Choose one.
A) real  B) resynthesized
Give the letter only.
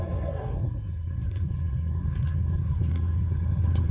B